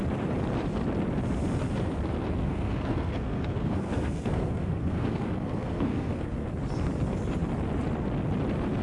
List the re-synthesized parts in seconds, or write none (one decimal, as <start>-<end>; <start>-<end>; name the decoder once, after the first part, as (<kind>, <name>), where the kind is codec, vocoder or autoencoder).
2.4-6.5 (codec, SNAC)